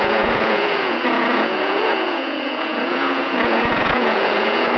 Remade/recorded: remade